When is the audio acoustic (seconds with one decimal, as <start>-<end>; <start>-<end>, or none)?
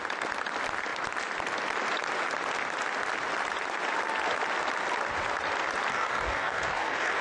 0.0-5.9